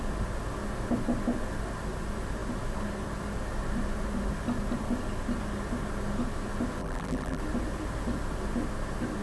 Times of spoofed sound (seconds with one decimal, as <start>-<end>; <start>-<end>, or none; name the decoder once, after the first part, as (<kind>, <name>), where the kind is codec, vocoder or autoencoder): 6.8-7.4 (vocoder, BigVGAN v2)